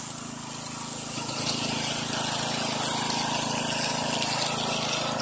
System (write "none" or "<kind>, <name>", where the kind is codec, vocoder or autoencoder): none